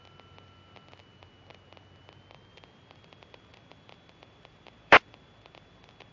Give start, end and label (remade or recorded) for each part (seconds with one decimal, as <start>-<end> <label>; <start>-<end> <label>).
0.0-2.5 recorded; 2.5-6.1 remade